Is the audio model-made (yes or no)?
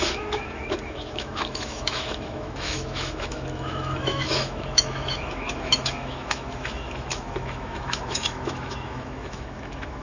yes